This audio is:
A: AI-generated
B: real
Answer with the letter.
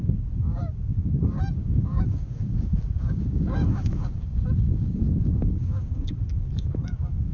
A